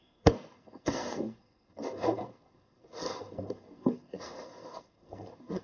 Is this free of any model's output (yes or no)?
no